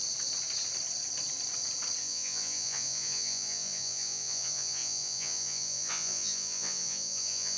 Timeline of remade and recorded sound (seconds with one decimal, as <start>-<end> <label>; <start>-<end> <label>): 0.0-2.0 recorded; 2.0-7.6 remade